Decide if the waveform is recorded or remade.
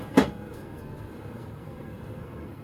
remade